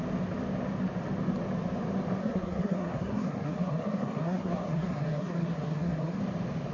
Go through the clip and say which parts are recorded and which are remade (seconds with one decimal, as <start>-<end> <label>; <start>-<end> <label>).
0.0-2.2 recorded; 2.2-6.2 remade; 6.2-6.7 recorded